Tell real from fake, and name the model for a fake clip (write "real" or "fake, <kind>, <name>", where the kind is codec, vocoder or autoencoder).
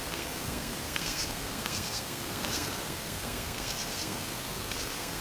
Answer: fake, codec, SNAC